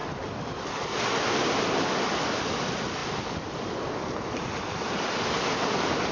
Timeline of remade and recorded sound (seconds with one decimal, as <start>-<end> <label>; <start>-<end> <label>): 0.0-6.1 recorded